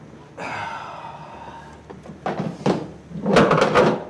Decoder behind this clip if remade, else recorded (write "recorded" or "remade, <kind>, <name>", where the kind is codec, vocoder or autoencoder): recorded